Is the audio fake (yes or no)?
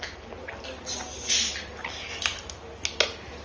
no